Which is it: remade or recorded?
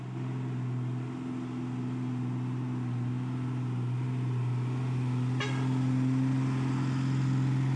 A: recorded